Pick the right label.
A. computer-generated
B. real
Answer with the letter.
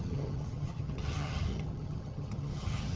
A